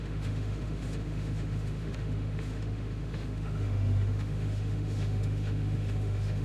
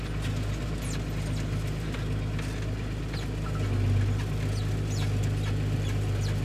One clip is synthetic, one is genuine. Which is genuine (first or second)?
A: second